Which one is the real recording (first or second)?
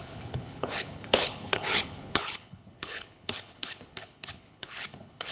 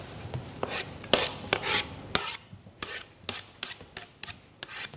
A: second